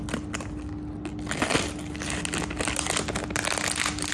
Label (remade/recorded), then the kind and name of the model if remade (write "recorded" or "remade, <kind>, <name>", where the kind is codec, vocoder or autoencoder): recorded